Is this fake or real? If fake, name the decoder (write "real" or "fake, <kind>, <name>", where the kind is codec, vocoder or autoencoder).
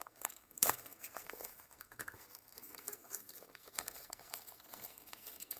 fake, codec, SNAC